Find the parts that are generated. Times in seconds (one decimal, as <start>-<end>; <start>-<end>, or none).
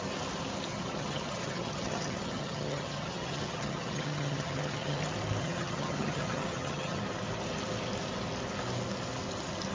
0.7-5.0; 5.4-7.0